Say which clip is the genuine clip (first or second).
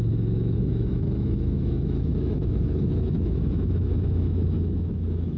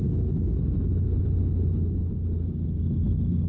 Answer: second